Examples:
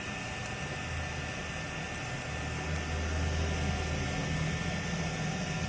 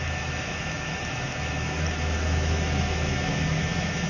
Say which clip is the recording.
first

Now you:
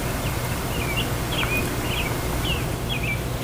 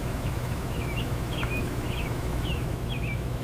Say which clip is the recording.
first